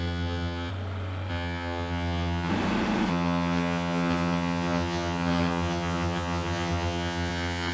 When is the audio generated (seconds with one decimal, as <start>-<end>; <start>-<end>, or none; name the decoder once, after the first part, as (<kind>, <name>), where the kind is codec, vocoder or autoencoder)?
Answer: 0.0-0.7 (vocoder, HiFi-GAN); 1.3-2.5; 3.1-7.7